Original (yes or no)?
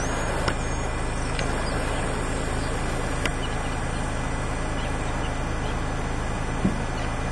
yes